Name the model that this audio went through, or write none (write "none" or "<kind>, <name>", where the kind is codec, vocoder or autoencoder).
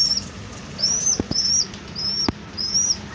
none